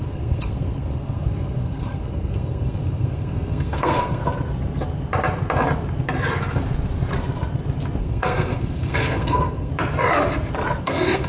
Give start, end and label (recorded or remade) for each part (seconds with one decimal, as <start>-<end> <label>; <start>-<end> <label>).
0.0-4.2 remade; 4.2-8.0 recorded; 8.0-9.7 remade; 9.7-10.8 recorded; 10.8-11.3 remade